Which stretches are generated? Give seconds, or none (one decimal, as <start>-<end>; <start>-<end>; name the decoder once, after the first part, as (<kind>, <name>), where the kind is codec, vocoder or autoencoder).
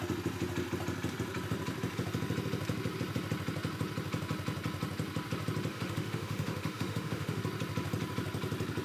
5.7-7.4 (autoencoder, DAC-VAE)